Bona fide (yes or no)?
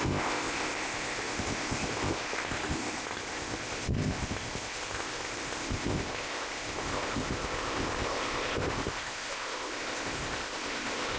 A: no